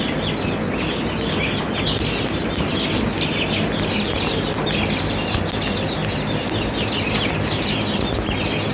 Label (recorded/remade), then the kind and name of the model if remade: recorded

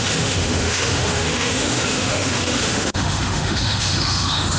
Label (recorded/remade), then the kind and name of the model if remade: remade, autoencoder, DAC-VAE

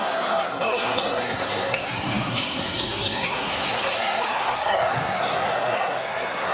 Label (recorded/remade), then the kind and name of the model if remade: remade, codec, SNAC